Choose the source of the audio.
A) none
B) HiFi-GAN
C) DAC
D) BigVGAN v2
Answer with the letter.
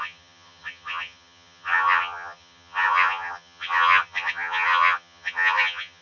B